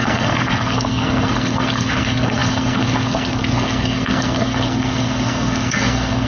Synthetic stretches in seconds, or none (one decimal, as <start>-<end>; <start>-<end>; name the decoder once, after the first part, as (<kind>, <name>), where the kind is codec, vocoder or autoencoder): 0.0-6.3 (codec, SNAC)